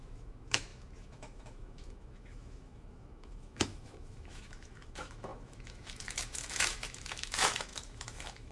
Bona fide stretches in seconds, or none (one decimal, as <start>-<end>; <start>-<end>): none